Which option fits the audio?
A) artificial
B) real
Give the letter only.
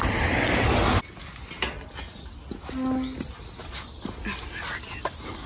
B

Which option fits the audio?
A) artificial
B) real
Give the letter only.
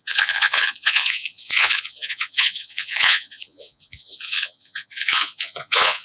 A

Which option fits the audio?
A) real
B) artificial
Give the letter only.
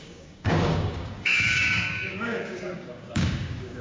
B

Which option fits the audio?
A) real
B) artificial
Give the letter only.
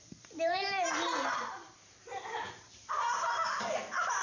B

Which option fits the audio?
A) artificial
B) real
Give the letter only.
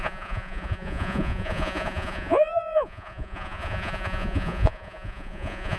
A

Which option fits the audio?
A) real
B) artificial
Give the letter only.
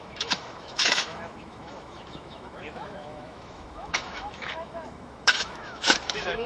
B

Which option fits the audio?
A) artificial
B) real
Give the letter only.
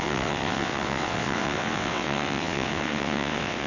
A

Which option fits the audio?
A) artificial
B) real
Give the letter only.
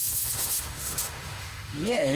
A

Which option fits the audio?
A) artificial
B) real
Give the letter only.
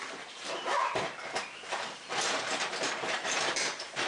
A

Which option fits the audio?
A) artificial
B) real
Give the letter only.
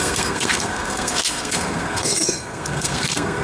A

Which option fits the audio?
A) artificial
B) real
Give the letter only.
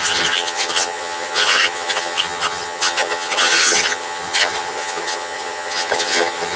A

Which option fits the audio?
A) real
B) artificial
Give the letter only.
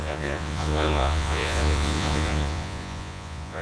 B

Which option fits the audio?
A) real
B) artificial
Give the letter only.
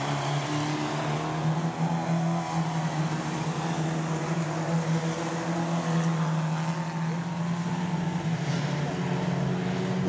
A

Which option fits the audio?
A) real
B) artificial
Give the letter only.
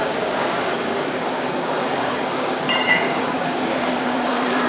B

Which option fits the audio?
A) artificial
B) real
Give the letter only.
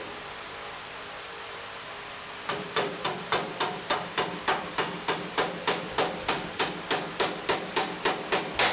A